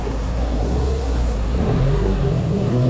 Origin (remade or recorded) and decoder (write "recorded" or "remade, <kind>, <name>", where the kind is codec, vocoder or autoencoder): remade, codec, SNAC